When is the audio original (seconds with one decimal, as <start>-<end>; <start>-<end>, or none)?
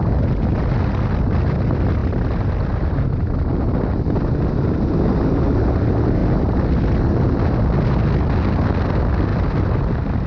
0.0-9.3; 9.8-10.3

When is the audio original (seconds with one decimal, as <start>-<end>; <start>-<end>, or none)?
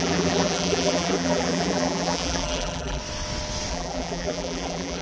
3.0-3.7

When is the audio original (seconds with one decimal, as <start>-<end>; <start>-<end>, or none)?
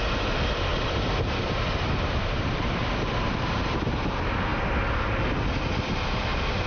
0.0-0.7; 3.8-6.7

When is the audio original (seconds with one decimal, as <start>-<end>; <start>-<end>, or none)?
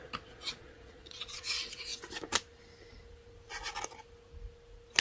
1.9-5.0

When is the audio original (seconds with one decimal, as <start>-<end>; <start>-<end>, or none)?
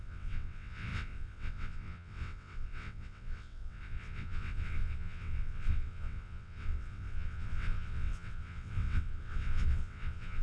none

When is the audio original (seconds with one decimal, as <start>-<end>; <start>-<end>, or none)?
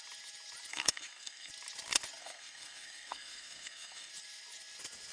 0.0-0.7; 1.5-2.2; 4.1-5.1